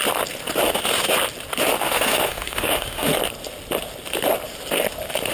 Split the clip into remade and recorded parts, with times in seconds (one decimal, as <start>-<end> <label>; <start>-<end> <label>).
0.0-1.8 recorded; 1.8-3.1 remade; 3.1-5.3 recorded